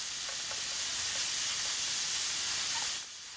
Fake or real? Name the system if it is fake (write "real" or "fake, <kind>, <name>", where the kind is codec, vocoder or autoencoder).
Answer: real